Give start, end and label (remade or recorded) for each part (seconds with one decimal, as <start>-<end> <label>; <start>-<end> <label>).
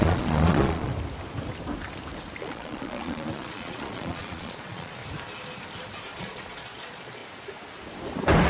0.0-0.9 remade; 0.9-2.4 recorded; 2.4-5.0 remade; 5.0-6.2 recorded; 6.2-7.2 remade; 7.2-8.5 recorded